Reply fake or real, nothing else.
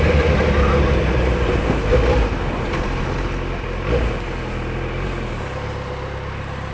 real